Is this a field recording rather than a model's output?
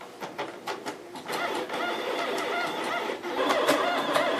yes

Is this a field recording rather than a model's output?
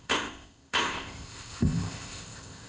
no